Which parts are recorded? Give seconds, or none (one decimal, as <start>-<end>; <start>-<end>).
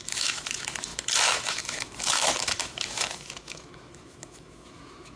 none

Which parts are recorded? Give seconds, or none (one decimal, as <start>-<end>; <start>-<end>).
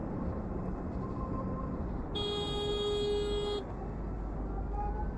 0.0-5.2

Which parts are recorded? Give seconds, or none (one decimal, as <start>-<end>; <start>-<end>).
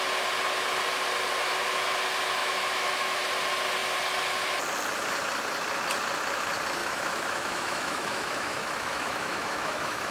0.0-2.4; 3.2-6.8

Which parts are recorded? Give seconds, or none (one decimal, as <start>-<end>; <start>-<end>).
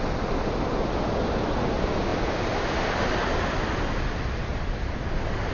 0.0-5.5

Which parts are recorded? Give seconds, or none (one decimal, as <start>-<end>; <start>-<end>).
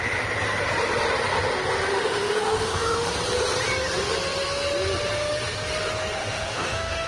0.0-1.9; 3.1-6.2